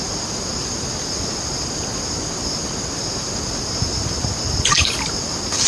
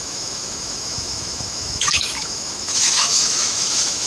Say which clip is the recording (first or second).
first